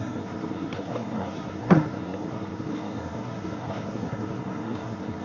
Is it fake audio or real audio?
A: fake